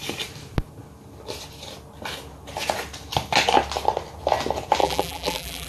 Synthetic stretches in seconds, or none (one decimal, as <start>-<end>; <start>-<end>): 4.8-5.7